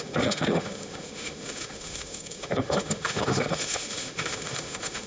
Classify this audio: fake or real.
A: fake